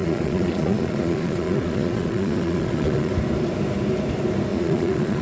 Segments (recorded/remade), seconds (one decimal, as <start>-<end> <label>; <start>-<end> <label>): 0.0-3.1 remade; 3.1-4.5 recorded; 4.5-5.2 remade